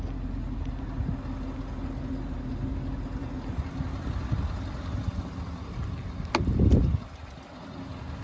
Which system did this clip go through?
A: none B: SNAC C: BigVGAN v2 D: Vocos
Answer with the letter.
A